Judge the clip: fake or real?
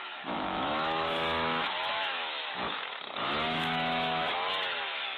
fake